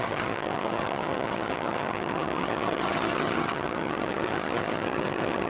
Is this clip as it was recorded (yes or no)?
no